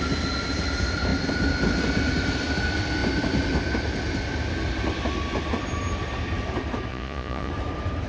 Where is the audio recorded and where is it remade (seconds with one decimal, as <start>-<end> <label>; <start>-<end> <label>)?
0.0-6.9 recorded; 6.9-7.5 remade; 7.5-8.1 recorded